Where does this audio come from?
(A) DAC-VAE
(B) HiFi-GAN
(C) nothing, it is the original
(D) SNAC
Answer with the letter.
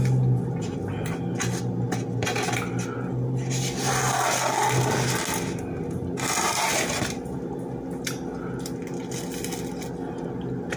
C